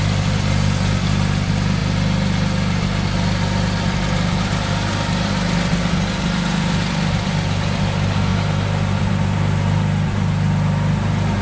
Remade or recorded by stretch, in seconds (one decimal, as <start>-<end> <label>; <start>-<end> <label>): 0.0-11.4 recorded